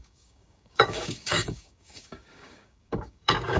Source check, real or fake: fake